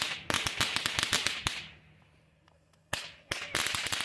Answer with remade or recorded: recorded